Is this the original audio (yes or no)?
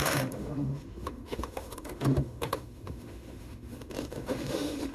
no